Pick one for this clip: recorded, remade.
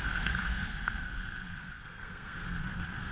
remade